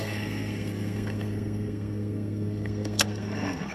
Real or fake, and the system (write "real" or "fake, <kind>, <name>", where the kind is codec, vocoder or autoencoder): fake, codec, SNAC